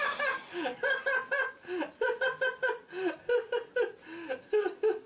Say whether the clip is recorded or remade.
recorded